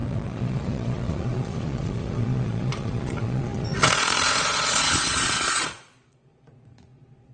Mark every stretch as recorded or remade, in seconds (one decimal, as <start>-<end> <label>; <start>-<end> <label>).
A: 0.0-7.3 remade